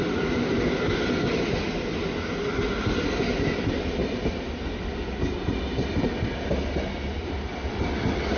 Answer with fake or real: real